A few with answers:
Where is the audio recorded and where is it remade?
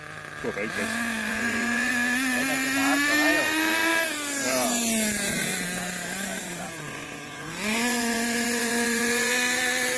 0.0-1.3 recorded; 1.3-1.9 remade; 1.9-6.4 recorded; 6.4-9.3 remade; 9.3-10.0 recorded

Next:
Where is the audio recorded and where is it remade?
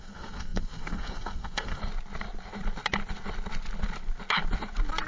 0.0-1.8 remade; 1.8-5.1 recorded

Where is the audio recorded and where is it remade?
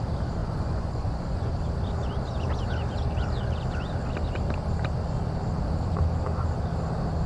0.0-0.4 recorded; 0.4-1.5 remade; 1.5-7.3 recorded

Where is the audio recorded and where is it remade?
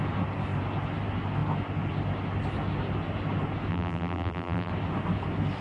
0.0-3.7 recorded; 3.7-4.7 remade; 4.7-5.6 recorded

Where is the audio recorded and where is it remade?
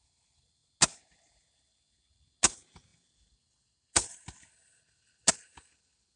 0.0-6.2 recorded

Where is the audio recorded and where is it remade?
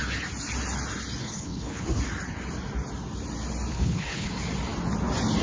0.0-1.2 recorded; 1.2-2.0 remade; 2.0-3.7 recorded; 3.7-4.3 remade; 4.3-5.4 recorded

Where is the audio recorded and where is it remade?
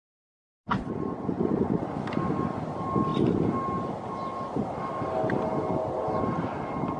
0.0-7.0 recorded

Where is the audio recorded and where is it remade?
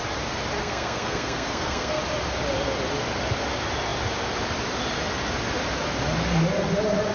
0.0-0.6 recorded; 0.6-2.0 remade; 2.0-7.1 recorded